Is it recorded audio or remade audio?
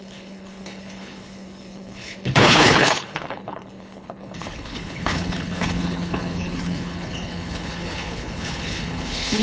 remade